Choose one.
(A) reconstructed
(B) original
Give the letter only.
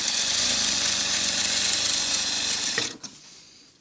A